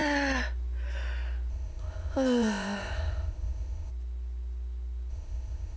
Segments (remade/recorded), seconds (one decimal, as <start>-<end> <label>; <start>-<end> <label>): 0.0-1.5 recorded; 1.5-3.9 remade; 3.9-5.1 recorded; 5.1-5.8 remade